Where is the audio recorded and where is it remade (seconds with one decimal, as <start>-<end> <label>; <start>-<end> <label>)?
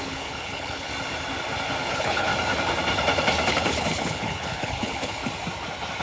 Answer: 0.0-0.9 remade; 0.9-1.9 recorded; 1.9-2.3 remade; 2.3-3.5 recorded; 3.5-5.2 remade; 5.2-6.0 recorded